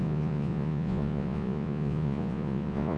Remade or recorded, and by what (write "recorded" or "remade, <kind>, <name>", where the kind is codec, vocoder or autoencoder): remade, vocoder, Vocos